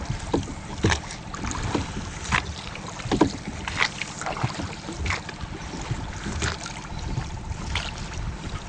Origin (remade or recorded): recorded